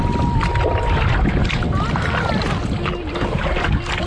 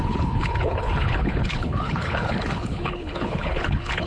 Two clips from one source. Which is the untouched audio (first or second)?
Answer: first